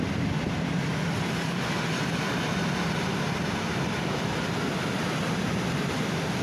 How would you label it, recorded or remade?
recorded